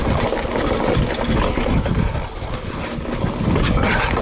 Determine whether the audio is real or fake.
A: real